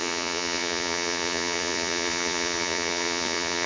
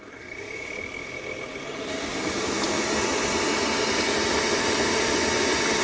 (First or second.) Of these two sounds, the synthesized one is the first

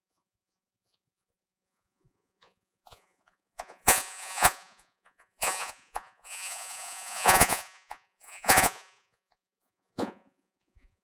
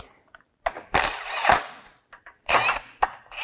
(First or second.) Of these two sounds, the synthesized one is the first